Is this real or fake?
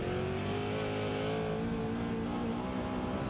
real